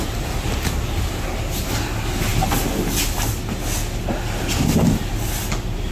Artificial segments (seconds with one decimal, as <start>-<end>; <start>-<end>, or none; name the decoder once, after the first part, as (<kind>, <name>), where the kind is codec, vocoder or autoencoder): none